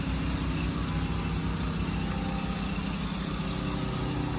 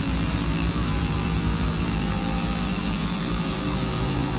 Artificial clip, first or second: second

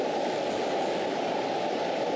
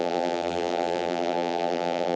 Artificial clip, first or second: second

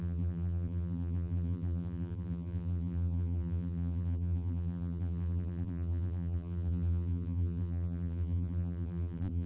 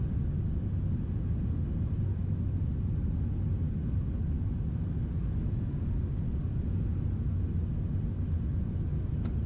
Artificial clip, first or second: first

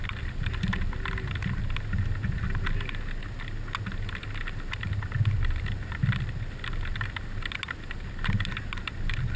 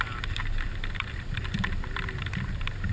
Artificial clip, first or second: second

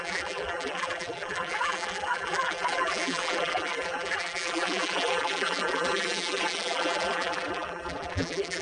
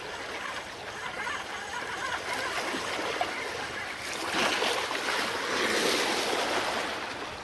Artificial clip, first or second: first